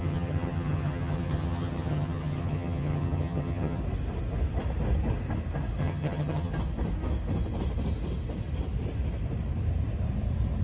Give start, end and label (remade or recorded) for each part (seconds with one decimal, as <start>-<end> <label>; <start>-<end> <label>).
0.0-3.8 remade; 3.8-5.8 recorded; 5.8-6.5 remade; 6.5-10.6 recorded